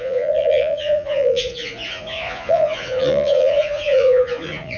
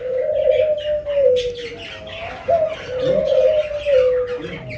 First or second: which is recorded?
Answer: second